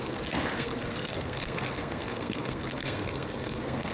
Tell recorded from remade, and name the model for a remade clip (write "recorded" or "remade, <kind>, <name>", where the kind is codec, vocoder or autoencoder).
remade, codec, SNAC